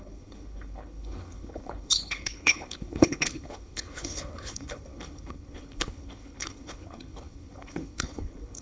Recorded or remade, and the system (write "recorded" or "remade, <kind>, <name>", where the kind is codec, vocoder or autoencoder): remade, codec, HILCodec